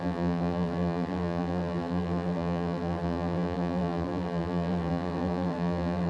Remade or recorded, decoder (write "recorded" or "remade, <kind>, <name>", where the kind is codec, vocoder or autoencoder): remade, vocoder, BigVGAN v2